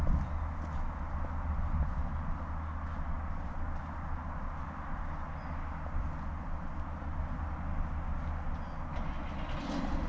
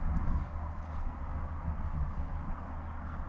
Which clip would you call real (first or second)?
first